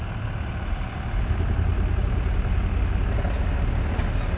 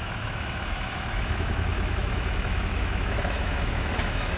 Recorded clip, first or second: first